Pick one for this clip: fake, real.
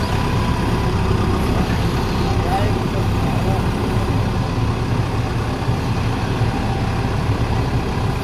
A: fake